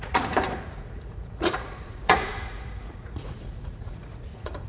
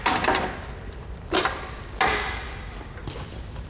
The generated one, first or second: first